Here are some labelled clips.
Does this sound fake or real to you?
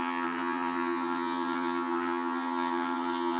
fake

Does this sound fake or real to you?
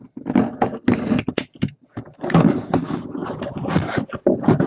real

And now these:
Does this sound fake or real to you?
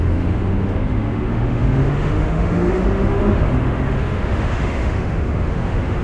fake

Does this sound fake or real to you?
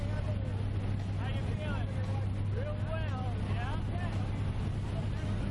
real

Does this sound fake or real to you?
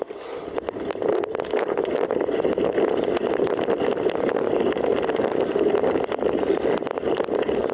real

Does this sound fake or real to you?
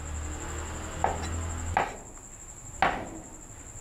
real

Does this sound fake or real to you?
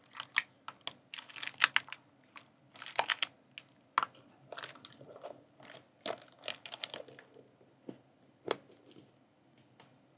real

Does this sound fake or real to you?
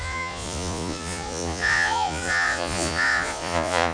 fake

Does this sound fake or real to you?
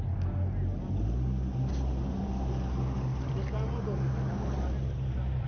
real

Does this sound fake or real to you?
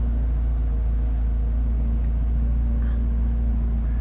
real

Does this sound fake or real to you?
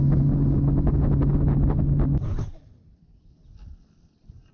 real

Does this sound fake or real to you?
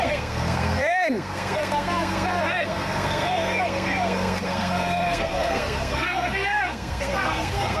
fake